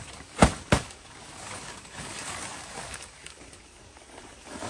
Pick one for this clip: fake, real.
fake